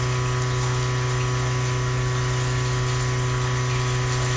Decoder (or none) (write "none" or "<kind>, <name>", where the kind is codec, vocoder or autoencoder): none